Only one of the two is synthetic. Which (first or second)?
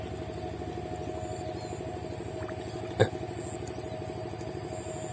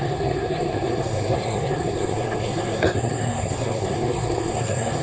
second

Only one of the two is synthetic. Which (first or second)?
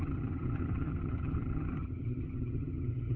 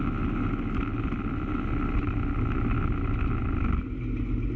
first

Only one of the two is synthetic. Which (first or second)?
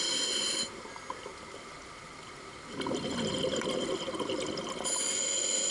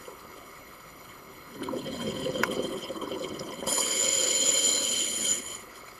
second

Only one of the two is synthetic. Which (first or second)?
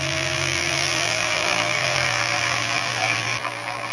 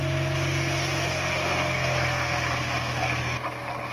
first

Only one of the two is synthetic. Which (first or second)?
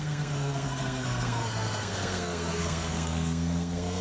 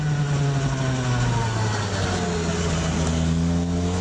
first